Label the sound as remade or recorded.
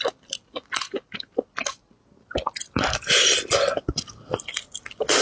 recorded